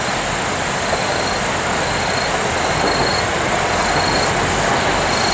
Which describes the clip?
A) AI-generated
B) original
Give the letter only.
B